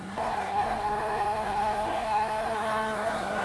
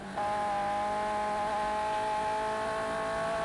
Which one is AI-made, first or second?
first